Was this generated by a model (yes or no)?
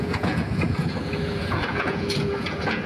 yes